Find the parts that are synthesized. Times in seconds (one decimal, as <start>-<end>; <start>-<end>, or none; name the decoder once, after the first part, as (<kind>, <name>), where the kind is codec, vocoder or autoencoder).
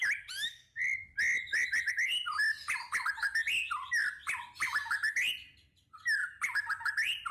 1.3-1.9 (vocoder, BigVGAN v2); 6.2-6.7